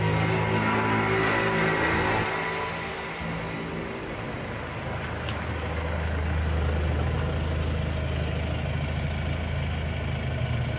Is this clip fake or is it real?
real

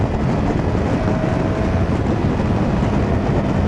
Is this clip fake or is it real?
real